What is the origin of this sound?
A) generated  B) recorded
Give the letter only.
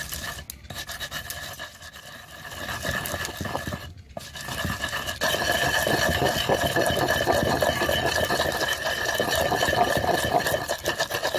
B